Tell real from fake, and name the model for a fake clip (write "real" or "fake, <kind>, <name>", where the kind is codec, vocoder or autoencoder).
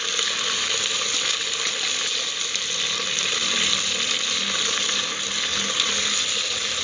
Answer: real